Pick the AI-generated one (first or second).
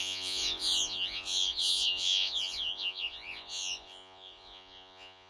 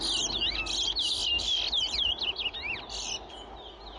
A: first